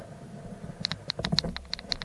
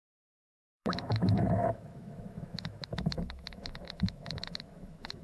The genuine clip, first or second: first